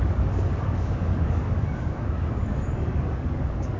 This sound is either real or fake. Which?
fake